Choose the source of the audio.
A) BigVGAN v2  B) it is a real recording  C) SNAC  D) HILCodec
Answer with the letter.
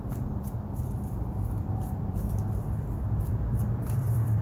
A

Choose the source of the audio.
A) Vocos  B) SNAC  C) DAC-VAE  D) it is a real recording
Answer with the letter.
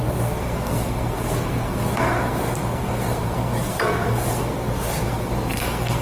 B